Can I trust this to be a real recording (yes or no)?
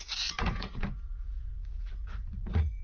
no